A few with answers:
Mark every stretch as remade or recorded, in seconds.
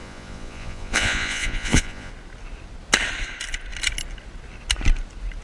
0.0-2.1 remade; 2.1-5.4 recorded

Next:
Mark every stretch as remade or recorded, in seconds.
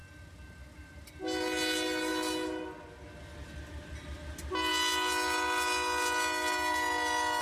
0.0-7.4 recorded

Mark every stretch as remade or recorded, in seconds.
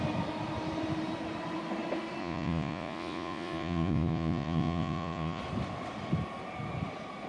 0.0-2.2 recorded; 2.2-5.4 remade; 5.4-7.3 recorded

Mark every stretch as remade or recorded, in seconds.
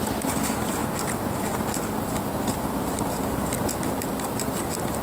0.0-5.0 recorded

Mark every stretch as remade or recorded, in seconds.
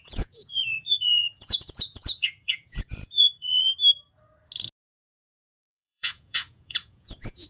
0.0-3.7 remade; 3.7-5.2 recorded; 5.2-7.5 remade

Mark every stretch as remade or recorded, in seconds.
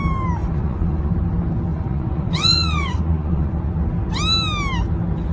0.0-0.4 recorded; 0.4-1.1 remade; 1.1-1.7 recorded; 1.7-3.7 remade; 3.7-5.3 recorded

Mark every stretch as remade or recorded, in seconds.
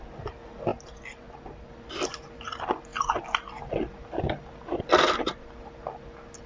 0.0-6.5 recorded